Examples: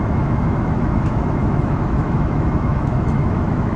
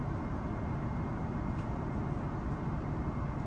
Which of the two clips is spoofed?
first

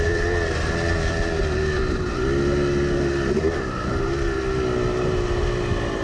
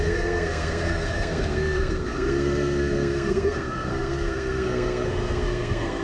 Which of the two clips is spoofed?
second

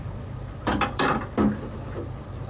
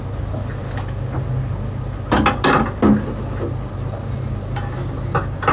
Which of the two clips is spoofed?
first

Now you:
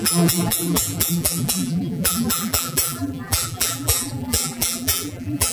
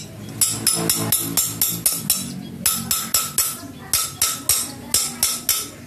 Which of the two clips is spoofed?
first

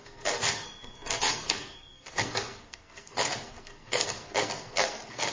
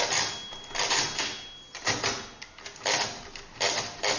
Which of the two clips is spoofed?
first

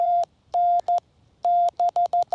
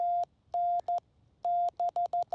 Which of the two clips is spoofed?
first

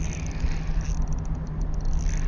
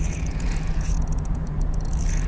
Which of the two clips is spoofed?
second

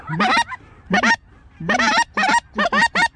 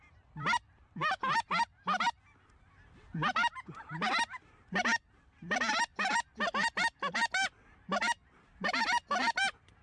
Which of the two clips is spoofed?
second